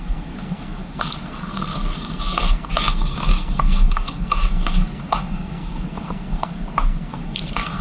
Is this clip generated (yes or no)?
yes